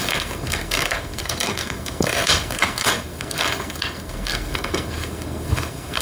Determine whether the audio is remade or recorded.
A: remade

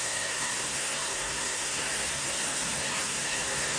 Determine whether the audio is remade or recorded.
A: remade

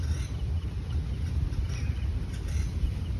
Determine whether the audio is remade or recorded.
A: recorded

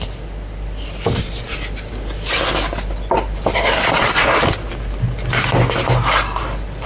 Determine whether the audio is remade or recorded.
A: recorded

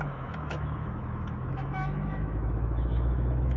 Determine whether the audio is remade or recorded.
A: remade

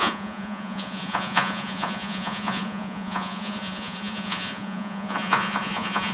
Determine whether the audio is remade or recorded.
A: remade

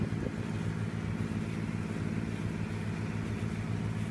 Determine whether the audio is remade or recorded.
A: recorded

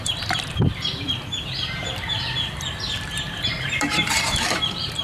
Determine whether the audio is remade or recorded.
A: remade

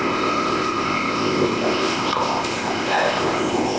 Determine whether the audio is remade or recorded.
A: remade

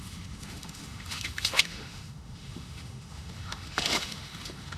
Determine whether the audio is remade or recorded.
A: remade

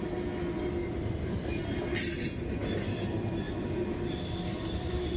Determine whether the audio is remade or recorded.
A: recorded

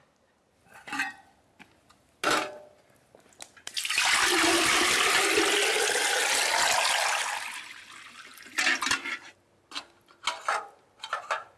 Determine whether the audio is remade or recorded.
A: recorded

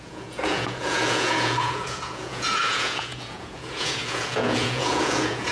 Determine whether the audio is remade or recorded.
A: remade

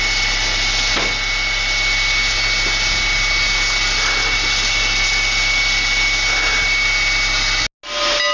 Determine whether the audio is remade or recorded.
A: recorded